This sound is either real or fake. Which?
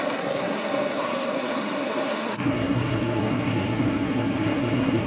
fake